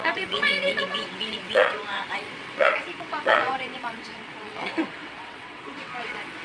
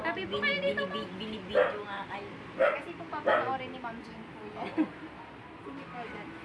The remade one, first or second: first